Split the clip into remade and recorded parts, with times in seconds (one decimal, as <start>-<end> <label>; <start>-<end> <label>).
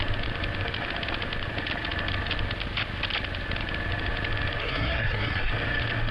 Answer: 0.0-4.6 recorded; 4.6-5.5 remade; 5.5-6.1 recorded